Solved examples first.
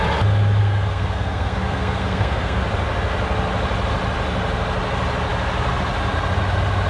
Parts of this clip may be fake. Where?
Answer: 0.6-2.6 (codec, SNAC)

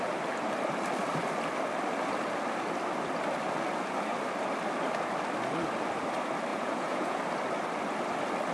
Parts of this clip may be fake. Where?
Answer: 6.5-7.2 (vocoder, Vocos)

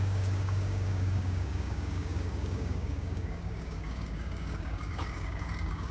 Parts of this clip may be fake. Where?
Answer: 0.0-5.9 (codec, DAC)

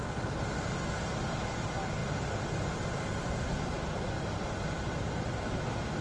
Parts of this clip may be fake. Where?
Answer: none

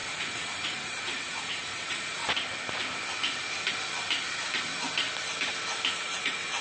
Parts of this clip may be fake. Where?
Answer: 0.0-2.2 (vocoder, Vocos); 5.9-6.6

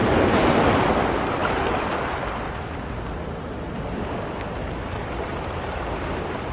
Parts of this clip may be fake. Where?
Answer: none

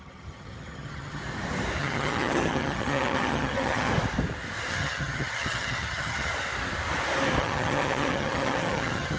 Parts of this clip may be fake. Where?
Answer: 0.0-1.2 (vocoder, HiFi-GAN); 1.8-3.9; 4.7-6.3; 7.4-9.2